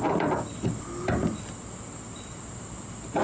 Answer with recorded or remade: recorded